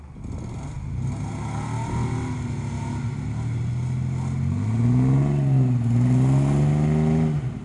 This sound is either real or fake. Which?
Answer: real